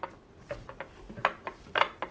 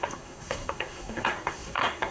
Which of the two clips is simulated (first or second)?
second